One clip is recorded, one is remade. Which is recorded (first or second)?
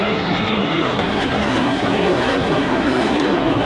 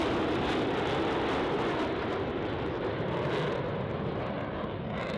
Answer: second